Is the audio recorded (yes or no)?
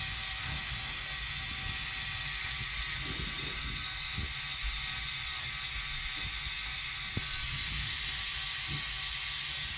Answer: yes